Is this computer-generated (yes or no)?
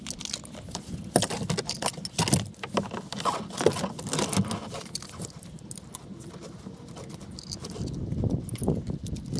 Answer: no